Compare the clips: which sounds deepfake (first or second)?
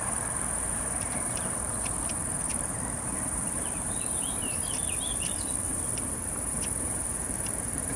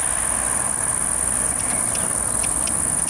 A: first